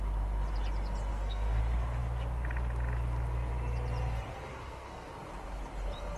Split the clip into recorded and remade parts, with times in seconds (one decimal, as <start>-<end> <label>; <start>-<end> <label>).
0.0-1.1 recorded; 1.1-1.6 remade; 1.6-4.3 recorded; 4.3-5.1 remade; 5.1-6.2 recorded

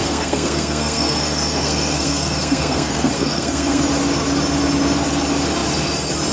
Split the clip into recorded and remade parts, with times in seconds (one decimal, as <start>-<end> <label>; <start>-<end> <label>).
0.0-3.8 remade; 3.8-6.3 recorded

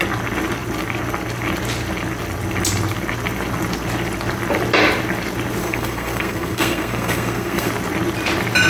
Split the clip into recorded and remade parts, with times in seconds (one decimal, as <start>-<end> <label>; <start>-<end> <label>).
0.0-5.6 recorded; 5.6-7.7 remade; 7.7-8.7 recorded